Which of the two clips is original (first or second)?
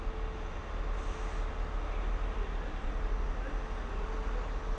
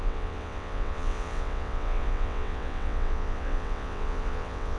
first